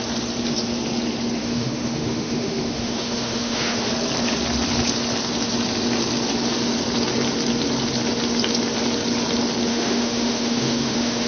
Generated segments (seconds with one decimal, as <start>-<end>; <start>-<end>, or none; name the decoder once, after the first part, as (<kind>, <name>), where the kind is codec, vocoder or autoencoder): 1.4-3.9 (autoencoder, DAC-VAE); 9.7-11.3